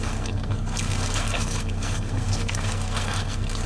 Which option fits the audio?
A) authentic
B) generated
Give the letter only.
B